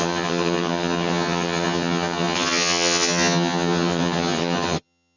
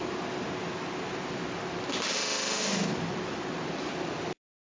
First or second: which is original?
second